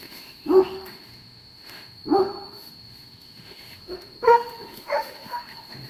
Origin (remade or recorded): remade